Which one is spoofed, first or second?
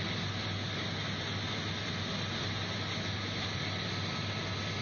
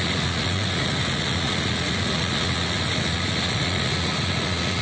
second